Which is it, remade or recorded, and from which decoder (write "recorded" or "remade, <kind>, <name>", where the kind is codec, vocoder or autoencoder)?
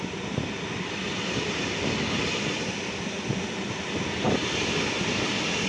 recorded